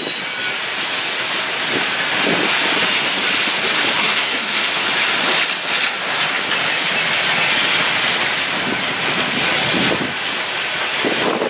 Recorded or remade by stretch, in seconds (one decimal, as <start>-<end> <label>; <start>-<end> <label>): 0.0-4.0 recorded; 4.0-4.7 remade; 4.7-11.5 recorded